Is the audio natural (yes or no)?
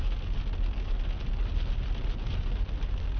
yes